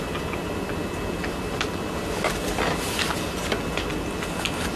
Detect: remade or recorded recorded